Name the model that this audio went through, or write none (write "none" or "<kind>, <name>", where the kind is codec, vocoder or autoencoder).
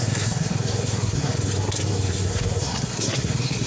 codec, SNAC